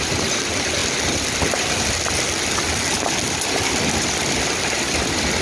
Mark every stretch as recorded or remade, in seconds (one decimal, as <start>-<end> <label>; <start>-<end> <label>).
0.0-5.4 recorded